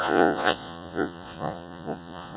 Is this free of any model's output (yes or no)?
no